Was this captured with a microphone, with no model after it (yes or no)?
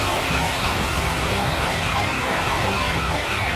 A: no